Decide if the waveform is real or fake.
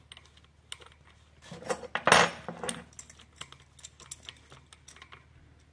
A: real